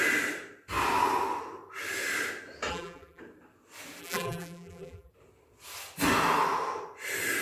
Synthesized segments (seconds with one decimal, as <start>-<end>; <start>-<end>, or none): 2.7-3.2; 4.0-5.1